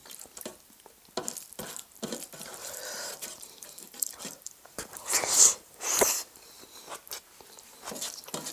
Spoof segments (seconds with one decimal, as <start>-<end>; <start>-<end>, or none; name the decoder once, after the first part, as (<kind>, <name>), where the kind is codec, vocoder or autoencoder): 2.6-6.6 (vocoder, BigVGAN v2)